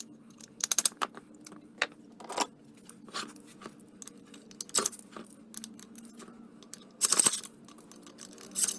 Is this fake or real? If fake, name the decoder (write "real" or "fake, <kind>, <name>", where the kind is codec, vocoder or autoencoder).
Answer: real